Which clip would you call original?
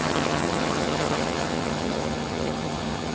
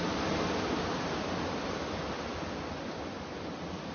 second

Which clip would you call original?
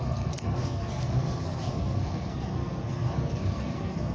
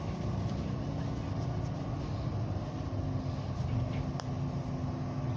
second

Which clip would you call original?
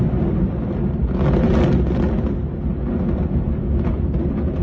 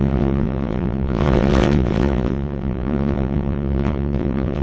first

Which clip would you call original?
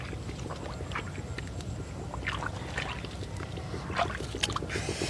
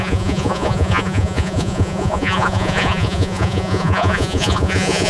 first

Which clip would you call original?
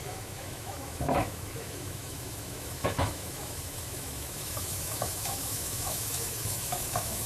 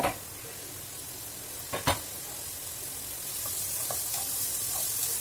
second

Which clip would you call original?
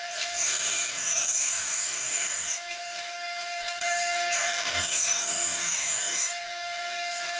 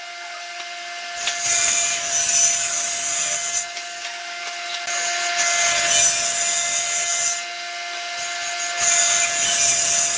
second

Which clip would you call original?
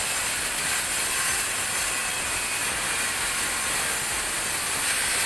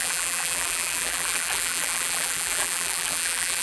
first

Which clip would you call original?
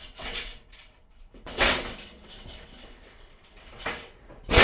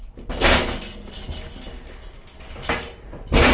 second